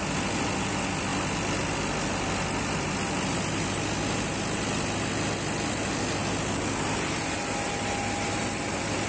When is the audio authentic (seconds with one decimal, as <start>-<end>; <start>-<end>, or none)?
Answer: 0.0-9.1